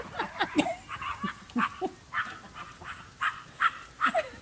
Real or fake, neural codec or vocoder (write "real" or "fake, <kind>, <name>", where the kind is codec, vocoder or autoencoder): real